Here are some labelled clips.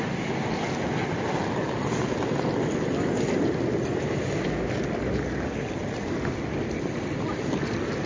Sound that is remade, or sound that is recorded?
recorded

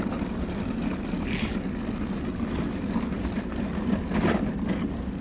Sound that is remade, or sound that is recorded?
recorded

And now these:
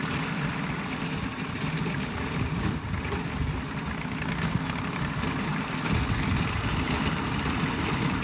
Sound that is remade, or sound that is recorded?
recorded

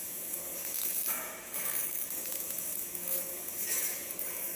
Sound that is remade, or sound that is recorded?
remade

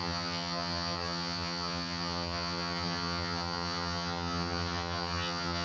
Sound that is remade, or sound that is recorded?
remade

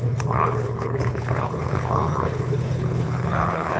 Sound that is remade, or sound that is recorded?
remade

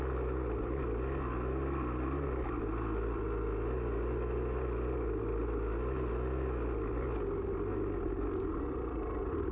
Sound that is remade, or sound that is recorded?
recorded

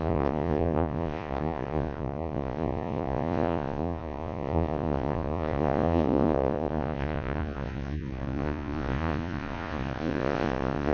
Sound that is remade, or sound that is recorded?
remade